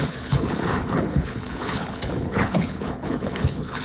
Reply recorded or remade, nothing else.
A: remade